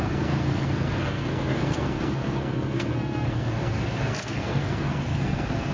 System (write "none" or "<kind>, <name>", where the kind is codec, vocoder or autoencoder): codec, SNAC